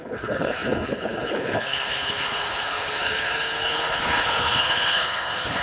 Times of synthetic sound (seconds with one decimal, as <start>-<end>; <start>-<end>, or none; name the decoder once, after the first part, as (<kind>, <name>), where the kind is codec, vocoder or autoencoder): 0.0-5.6 (codec, HILCodec)